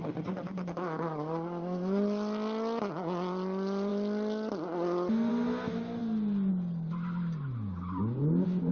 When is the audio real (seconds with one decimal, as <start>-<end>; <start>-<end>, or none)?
0.0-8.7